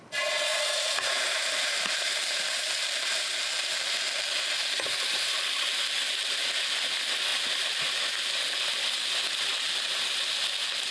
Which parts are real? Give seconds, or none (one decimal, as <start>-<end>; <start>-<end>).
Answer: 0.0-0.5; 3.7-10.9